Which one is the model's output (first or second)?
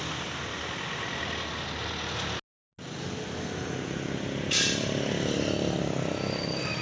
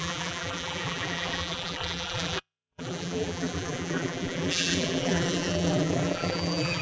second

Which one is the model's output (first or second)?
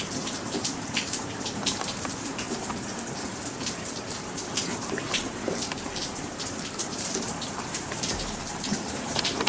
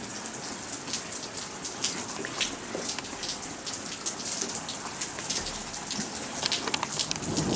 first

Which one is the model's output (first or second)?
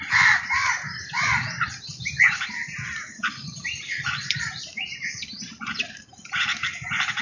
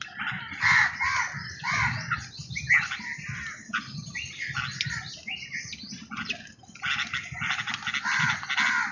first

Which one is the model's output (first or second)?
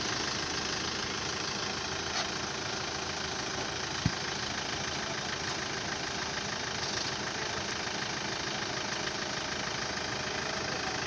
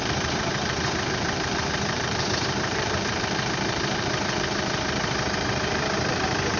second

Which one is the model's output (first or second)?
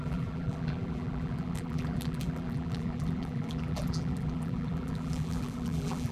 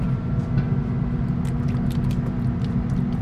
first